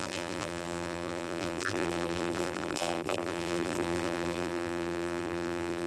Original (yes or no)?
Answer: no